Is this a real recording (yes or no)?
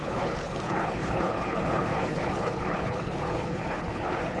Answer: no